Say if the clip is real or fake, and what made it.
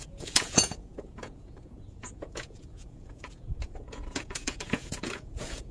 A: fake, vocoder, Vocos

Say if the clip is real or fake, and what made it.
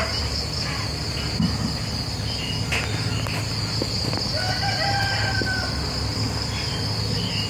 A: real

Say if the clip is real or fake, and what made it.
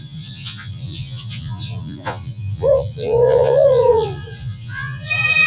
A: fake, vocoder, Vocos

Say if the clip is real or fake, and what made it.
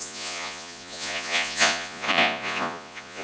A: fake, vocoder, Vocos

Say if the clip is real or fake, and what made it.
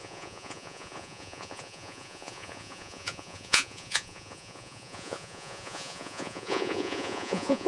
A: fake, vocoder, Vocos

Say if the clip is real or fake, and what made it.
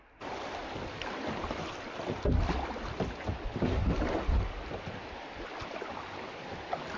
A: real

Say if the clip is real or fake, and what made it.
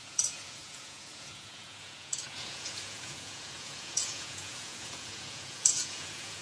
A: fake, vocoder, Vocos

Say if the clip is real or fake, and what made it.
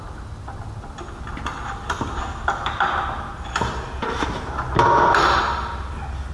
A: real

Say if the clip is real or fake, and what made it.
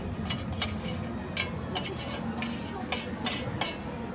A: real